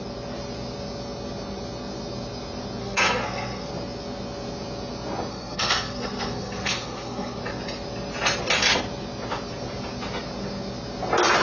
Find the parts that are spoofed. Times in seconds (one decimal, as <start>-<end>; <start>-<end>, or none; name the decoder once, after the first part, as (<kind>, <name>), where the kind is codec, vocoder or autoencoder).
2.8-3.7 (codec, SNAC); 5.3-7.4